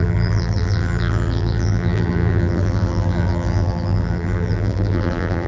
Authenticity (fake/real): fake